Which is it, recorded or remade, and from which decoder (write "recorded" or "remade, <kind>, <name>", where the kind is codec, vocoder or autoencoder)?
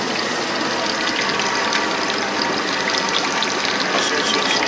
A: recorded